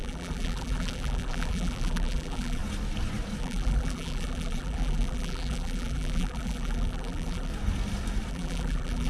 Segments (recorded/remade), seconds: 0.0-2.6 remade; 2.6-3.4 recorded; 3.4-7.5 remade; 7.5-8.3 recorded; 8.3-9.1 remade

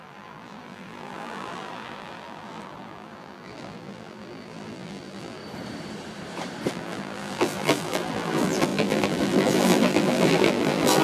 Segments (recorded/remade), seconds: 0.0-5.4 remade; 5.4-6.7 recorded; 6.7-11.0 remade

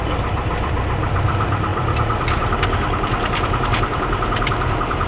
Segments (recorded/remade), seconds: 0.0-5.1 remade